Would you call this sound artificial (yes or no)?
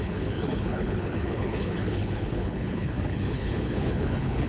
yes